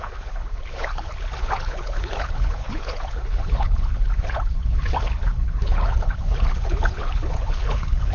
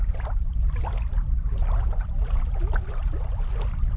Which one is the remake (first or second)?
first